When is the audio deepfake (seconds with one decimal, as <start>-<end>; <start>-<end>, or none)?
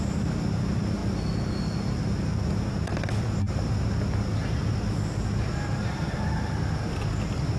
none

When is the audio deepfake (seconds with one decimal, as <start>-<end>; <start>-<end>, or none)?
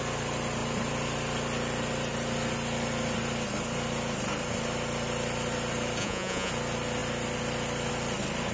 6.0-6.5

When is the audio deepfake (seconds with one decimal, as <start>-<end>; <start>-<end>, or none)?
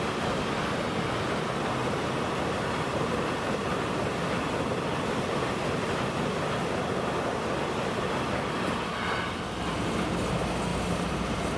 1.8-3.8; 10.7-11.6